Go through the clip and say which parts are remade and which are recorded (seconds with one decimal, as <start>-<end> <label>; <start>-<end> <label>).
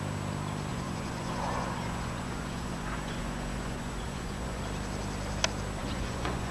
0.0-0.7 recorded; 0.7-4.6 remade; 4.6-5.8 recorded; 5.8-6.5 remade